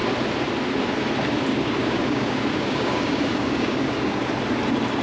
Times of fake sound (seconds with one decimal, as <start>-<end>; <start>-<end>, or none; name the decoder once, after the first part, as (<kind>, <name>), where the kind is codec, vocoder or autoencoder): 1.5-4.3 (codec, DAC)